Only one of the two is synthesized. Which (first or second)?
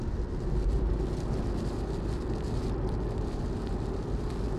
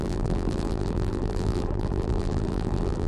second